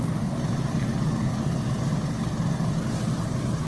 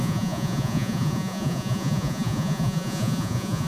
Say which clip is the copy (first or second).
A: second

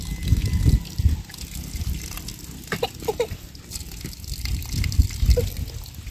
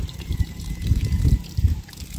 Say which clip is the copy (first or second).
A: second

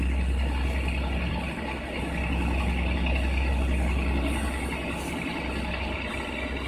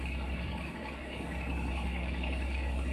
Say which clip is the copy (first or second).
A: second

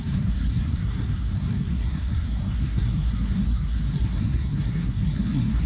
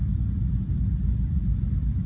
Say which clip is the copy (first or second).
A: first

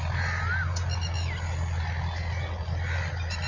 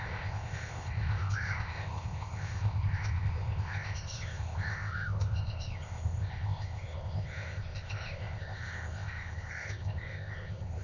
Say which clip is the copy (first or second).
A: second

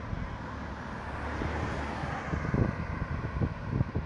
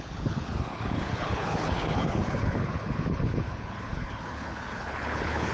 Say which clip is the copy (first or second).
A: second